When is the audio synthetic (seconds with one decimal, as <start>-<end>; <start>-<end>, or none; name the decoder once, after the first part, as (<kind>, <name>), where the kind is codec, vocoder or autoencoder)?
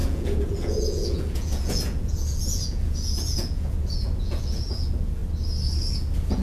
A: 0.0-5.2 (vocoder, Vocos); 5.8-6.4